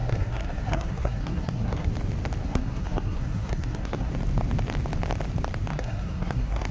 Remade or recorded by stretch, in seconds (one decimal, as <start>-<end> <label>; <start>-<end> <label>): 0.0-1.9 remade; 1.9-2.4 recorded; 2.4-4.1 remade; 4.1-5.7 recorded; 5.7-6.7 remade